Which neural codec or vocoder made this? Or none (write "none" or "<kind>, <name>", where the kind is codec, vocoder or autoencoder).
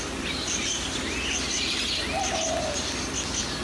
none